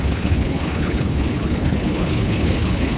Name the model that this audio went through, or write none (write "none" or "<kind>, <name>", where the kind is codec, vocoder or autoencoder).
codec, HILCodec